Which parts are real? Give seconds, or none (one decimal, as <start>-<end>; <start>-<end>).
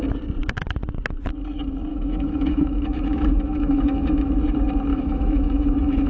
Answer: 0.0-1.9; 4.3-4.9